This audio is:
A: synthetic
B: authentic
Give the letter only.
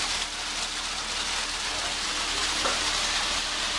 B